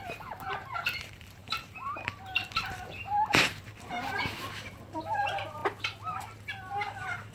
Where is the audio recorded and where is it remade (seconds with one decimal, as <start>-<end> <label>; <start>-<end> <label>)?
0.0-5.6 remade; 5.6-6.2 recorded; 6.2-7.3 remade